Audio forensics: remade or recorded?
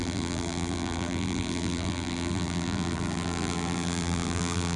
remade